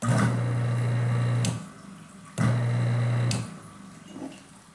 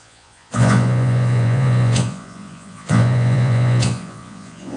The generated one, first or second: second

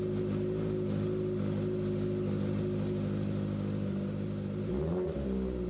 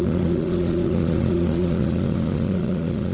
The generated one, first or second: second